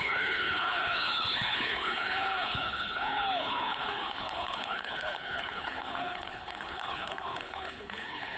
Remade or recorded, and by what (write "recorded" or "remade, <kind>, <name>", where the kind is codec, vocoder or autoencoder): remade, codec, HILCodec